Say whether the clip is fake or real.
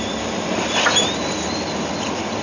real